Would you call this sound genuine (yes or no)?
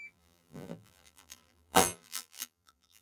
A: no